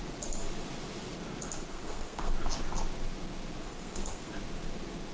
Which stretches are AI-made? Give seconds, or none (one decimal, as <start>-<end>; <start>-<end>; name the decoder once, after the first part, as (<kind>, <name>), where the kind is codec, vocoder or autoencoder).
1.7-2.3 (codec, SNAC); 3.6-4.3